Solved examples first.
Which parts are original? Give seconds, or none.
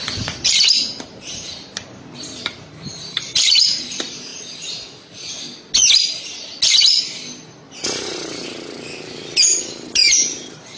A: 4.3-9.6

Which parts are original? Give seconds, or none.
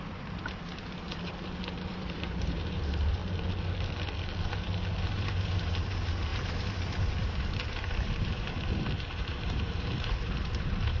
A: 1.3-1.9; 3.2-5.1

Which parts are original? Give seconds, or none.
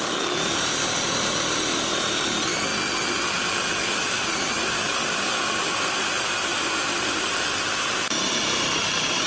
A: 2.7-4.0; 6.5-9.3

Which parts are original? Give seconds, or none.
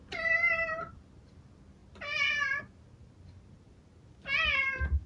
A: 0.0-5.1